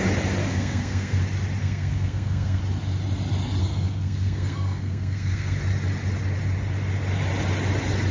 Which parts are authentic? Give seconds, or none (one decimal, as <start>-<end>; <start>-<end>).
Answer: 0.0-0.4; 1.2-1.6; 2.6-3.6; 5.6-8.1